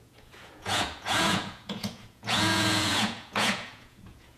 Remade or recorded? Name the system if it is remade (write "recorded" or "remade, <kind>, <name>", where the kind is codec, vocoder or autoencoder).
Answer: remade, vocoder, Vocos